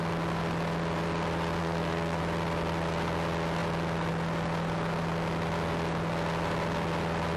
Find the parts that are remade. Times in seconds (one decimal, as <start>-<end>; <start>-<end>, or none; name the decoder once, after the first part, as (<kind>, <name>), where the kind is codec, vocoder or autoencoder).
1.6-2.2 (codec, SNAC)